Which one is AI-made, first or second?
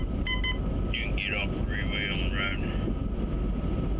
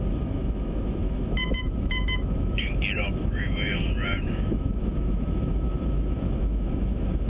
second